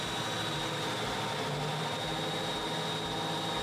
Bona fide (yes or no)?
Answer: yes